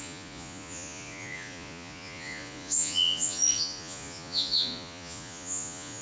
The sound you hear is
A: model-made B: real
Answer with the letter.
A